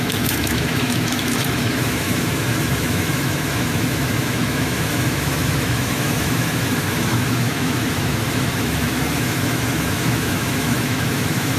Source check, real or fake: fake